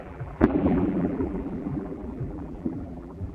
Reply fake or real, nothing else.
fake